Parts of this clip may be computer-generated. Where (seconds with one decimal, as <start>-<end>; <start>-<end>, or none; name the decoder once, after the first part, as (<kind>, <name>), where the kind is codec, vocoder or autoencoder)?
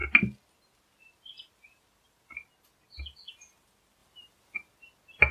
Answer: none